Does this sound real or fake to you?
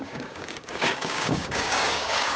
fake